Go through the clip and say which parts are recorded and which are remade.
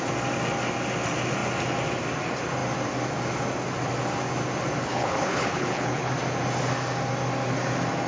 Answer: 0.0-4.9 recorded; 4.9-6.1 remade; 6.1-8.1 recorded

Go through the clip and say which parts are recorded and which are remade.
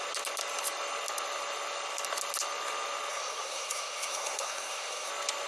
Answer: 0.0-3.1 recorded; 3.1-5.1 remade; 5.1-5.5 recorded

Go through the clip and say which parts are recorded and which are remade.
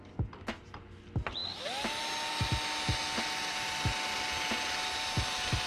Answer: 0.0-5.7 recorded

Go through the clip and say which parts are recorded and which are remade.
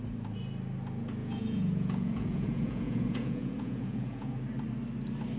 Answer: 0.0-1.2 recorded; 1.2-4.4 remade; 4.4-5.4 recorded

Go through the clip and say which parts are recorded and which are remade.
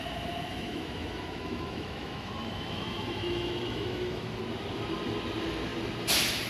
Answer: 0.0-0.5 recorded; 0.5-4.4 remade; 4.4-6.5 recorded